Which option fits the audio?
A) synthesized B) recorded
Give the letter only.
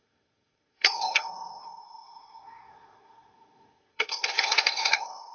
A